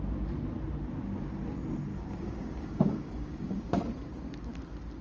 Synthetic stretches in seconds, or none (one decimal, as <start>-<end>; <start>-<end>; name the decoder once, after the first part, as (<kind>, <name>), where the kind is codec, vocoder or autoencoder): 1.9-3.8 (codec, DAC)